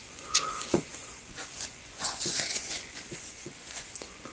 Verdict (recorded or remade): remade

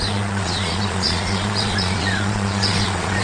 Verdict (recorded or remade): remade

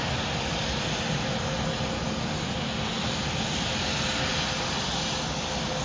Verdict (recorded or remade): recorded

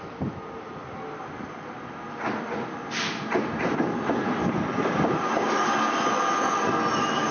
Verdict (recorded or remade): recorded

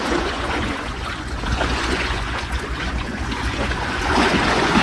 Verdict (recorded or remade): remade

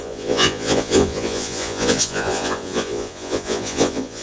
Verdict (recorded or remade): remade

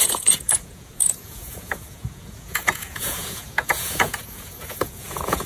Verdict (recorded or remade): remade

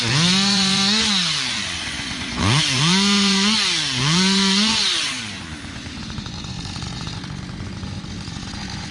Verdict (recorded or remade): remade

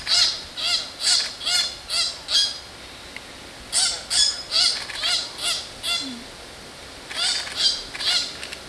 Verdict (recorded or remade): recorded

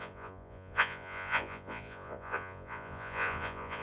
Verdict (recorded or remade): remade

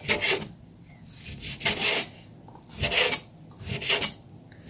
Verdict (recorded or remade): recorded